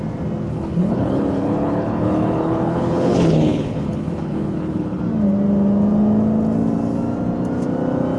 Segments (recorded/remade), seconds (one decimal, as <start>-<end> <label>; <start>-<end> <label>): 0.0-0.5 recorded; 0.5-5.0 remade; 5.0-8.2 recorded